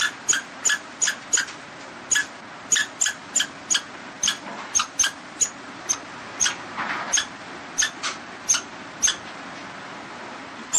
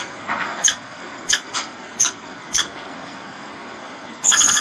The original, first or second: first